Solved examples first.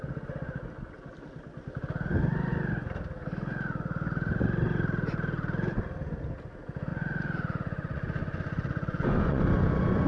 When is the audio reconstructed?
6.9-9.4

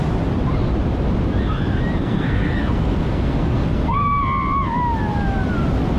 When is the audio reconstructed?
2.0-4.2